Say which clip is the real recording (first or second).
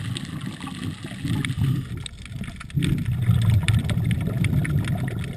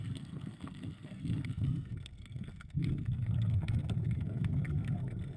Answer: first